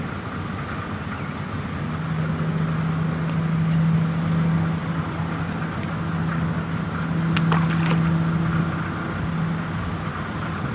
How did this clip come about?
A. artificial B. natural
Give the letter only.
B